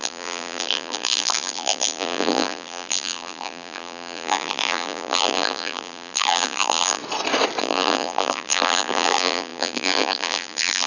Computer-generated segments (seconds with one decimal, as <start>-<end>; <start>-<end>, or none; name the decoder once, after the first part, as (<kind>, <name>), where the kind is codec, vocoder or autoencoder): 0.0-7.0 (vocoder, BigVGAN v2); 7.6-10.9